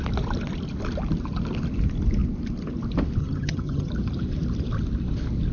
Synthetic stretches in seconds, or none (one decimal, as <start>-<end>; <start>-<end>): 3.2-3.9